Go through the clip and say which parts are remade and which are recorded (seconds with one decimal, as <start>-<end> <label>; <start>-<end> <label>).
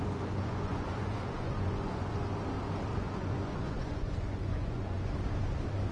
0.0-2.1 remade; 2.1-2.9 recorded; 2.9-5.1 remade; 5.1-5.9 recorded